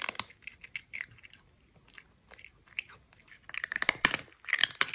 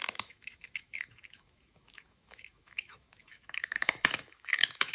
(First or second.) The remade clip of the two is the second